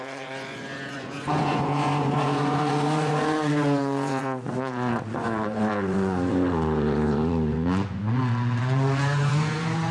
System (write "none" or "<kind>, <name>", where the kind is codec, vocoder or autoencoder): vocoder, Vocos